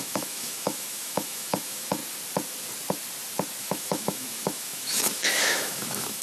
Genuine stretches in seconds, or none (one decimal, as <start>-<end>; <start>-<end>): 2.0-3.6